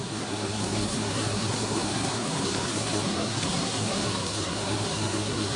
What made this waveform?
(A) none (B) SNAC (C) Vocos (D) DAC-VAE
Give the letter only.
B